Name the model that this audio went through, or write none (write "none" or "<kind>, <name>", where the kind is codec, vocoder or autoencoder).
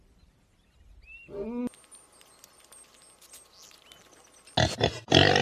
none